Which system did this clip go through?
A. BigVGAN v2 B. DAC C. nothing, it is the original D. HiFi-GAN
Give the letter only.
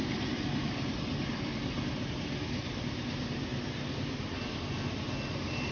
C